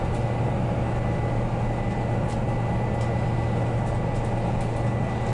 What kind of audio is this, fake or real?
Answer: real